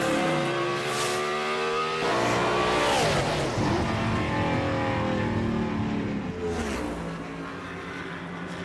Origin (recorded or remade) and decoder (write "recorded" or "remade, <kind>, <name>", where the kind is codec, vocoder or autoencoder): recorded